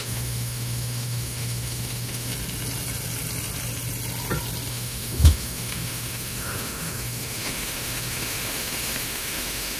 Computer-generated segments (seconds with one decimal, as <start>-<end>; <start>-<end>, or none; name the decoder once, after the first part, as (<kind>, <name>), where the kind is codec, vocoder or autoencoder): 0.0-2.3 (autoencoder, DAC-VAE); 4.7-9.8